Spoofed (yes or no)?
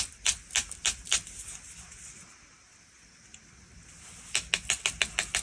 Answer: no